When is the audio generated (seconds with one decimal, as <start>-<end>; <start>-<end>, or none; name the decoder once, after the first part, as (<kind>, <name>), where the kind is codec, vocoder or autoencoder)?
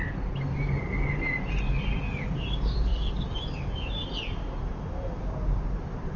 none